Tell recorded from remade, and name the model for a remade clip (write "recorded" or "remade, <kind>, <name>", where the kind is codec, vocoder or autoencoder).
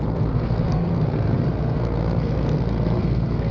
remade, codec, SNAC